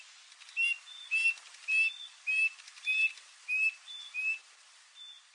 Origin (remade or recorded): recorded